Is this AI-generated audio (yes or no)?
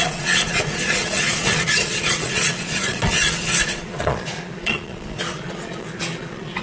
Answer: yes